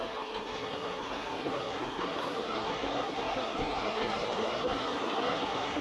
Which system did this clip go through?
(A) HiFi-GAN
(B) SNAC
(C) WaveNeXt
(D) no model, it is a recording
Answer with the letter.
B